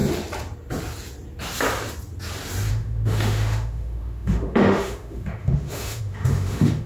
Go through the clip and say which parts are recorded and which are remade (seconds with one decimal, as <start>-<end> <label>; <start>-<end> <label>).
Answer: 0.0-2.7 recorded; 2.7-6.9 remade